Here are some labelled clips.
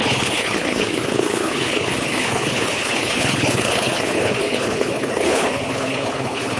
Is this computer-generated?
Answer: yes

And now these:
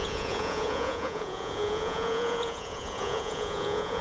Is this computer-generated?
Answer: yes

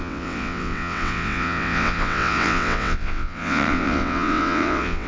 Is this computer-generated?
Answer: yes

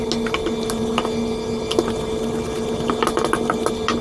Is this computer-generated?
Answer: no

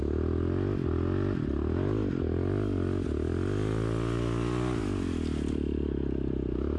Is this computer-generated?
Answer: no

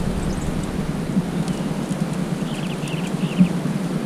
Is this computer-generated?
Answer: no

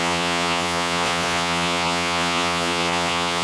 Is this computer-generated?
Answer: yes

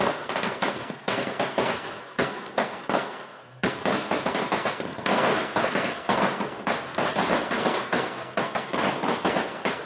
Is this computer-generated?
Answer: yes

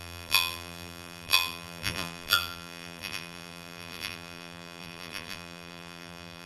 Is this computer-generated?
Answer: yes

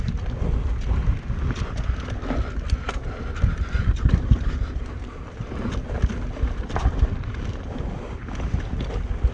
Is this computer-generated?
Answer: no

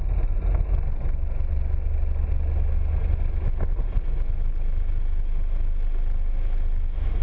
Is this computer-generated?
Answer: no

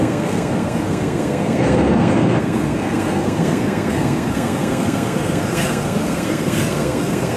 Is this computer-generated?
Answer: yes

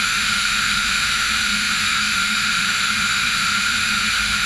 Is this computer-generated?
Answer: yes